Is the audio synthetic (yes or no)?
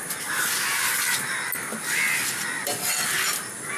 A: no